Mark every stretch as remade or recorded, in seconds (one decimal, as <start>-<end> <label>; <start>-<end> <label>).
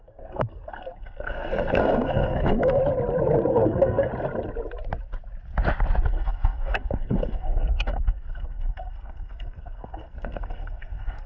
0.0-2.8 remade; 2.8-3.5 recorded; 3.5-4.1 remade; 4.1-6.1 recorded; 6.1-11.3 remade